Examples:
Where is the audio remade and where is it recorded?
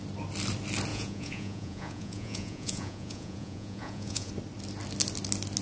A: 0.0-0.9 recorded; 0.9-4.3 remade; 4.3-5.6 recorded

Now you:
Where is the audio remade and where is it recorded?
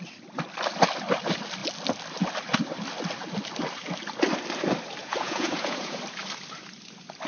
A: 0.0-5.0 recorded; 5.0-6.0 remade; 6.0-7.3 recorded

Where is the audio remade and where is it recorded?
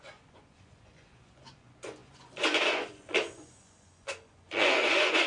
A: 0.0-5.3 remade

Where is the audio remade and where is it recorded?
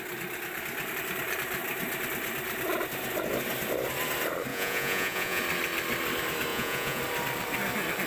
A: 0.0-4.5 recorded; 4.5-5.4 remade; 5.4-6.5 recorded; 6.5-7.0 remade; 7.0-8.1 recorded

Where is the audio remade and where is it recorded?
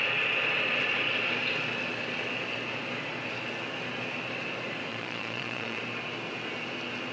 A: 0.0-4.9 recorded; 4.9-5.8 remade; 5.8-7.1 recorded